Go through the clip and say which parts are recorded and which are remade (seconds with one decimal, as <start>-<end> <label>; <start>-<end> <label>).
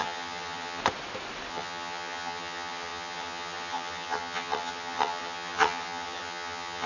0.0-0.8 remade; 0.8-1.5 recorded; 1.5-6.9 remade